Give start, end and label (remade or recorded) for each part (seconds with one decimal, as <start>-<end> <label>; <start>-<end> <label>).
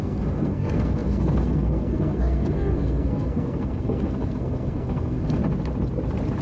0.0-5.4 remade; 5.4-6.4 recorded